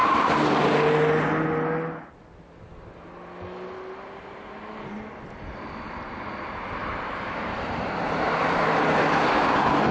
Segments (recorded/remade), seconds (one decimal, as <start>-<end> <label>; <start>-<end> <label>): 0.0-6.8 recorded; 6.8-9.0 remade; 9.0-9.9 recorded